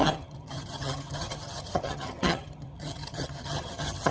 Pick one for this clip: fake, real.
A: fake